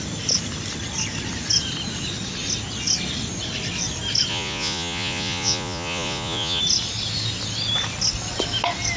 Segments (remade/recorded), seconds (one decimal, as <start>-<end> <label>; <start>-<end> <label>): 0.0-4.3 recorded; 4.3-6.6 remade; 6.6-9.0 recorded

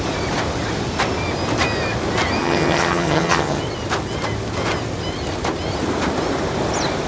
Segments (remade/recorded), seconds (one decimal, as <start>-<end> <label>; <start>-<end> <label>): 0.0-2.4 recorded; 2.4-3.6 remade; 3.6-7.1 recorded